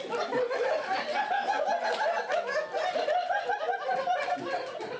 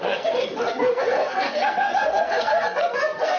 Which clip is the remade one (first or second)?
second